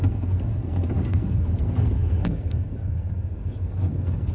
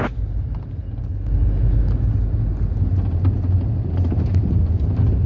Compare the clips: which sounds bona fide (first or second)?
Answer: second